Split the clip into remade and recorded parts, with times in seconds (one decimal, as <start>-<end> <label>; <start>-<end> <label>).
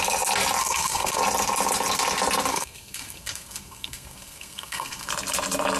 0.0-0.6 recorded; 0.6-1.2 remade; 1.2-2.5 recorded; 2.5-5.1 remade; 5.1-5.8 recorded